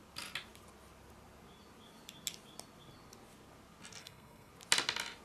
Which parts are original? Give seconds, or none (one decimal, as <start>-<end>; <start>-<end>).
0.0-4.0; 4.5-5.2